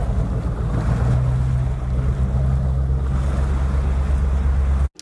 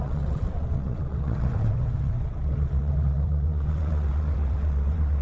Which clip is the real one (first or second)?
first